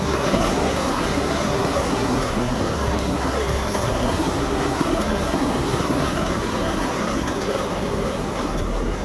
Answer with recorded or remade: remade